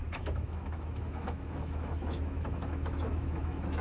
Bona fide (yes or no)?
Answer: no